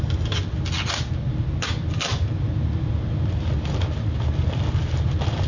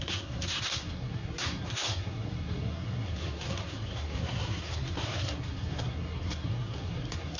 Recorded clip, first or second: first